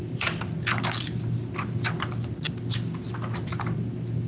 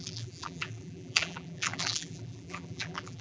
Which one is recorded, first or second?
first